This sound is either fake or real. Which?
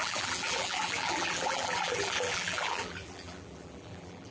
fake